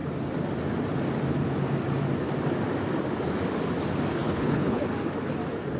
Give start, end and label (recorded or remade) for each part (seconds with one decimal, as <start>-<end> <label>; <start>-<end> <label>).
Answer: 0.0-4.2 recorded; 4.2-4.8 remade; 4.8-5.8 recorded